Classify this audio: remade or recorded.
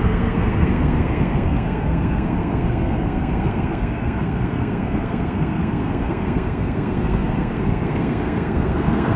remade